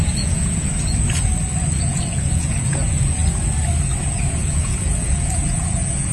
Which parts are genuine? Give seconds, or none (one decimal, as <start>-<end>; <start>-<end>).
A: 1.3-1.8; 3.2-4.0

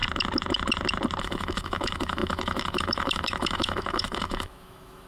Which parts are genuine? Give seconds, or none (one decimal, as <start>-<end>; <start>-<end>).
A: 0.0-1.2